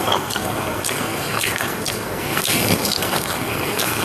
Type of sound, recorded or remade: remade